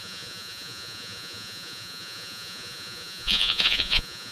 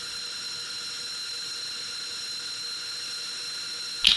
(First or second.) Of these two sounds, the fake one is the first